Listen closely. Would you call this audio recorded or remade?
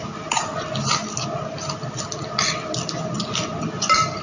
recorded